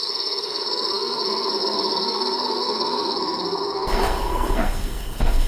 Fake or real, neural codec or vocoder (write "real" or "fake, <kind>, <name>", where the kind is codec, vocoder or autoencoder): fake, codec, SNAC